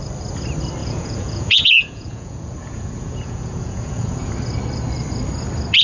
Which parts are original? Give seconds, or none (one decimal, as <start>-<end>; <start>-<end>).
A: 0.0-0.8; 4.3-5.8